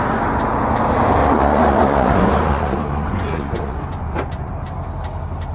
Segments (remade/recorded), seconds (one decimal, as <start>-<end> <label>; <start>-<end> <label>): 0.0-1.2 recorded; 1.2-4.5 remade; 4.5-5.5 recorded